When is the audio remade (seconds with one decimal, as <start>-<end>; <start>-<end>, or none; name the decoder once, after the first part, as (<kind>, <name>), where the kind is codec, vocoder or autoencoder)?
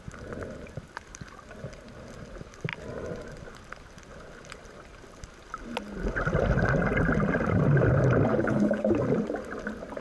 8.3-8.9 (codec, HILCodec)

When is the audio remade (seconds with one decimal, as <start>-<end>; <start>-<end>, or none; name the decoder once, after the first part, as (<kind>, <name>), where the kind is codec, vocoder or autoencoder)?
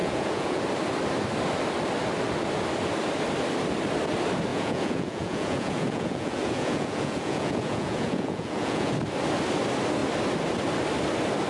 0.0-0.6 (vocoder, Vocos); 4.5-8.9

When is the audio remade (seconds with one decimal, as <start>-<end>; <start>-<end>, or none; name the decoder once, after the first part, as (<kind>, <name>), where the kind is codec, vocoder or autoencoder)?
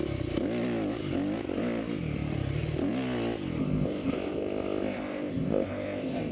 3.6-6.3 (codec, ZipCodec)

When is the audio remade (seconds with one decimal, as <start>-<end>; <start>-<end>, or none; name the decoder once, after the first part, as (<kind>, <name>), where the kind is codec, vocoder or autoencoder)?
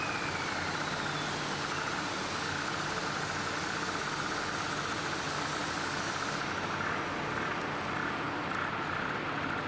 none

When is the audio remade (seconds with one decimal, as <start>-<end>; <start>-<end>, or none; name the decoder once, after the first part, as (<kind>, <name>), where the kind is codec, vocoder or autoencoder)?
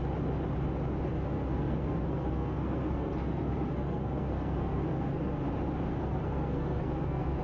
1.1-5.5 (codec, SNAC); 5.9-7.4